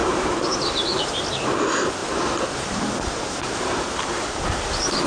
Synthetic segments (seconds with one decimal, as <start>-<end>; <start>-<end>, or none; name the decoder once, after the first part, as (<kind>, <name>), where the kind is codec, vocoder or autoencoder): 0.0-0.8 (vocoder, BigVGAN v2); 2.0-4.4